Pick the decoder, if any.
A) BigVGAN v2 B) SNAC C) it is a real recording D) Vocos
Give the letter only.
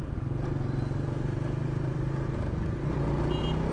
C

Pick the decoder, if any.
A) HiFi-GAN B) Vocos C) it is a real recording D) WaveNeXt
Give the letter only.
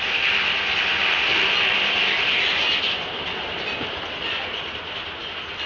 C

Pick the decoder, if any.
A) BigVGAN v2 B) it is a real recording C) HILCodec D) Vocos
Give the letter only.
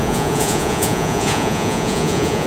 D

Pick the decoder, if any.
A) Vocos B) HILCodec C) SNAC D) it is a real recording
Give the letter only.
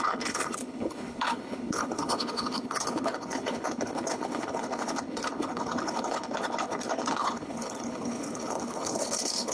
B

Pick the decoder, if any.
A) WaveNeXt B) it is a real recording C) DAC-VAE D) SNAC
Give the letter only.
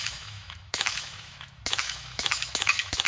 C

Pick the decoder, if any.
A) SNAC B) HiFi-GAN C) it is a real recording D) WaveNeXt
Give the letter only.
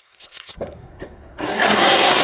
A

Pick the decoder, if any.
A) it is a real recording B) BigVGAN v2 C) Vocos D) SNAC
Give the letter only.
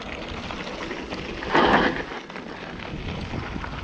A